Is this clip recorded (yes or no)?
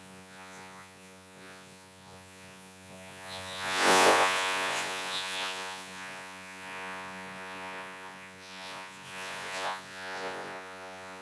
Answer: no